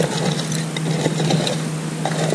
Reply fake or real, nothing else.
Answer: real